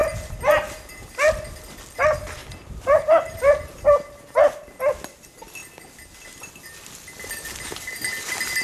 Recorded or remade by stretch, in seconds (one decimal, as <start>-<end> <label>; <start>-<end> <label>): 0.0-8.6 recorded